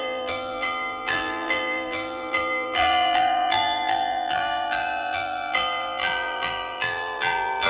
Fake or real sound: fake